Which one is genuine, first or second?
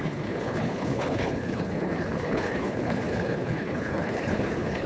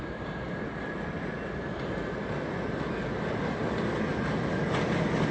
second